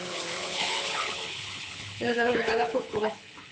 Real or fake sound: fake